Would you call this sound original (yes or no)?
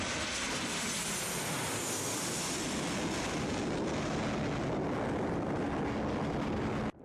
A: yes